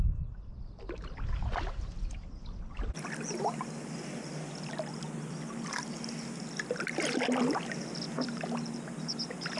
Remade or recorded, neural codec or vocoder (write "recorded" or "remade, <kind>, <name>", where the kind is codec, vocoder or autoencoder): recorded